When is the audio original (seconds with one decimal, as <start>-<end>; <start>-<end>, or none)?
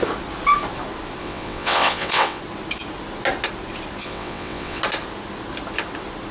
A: 0.0-1.2; 2.4-4.0; 4.8-6.3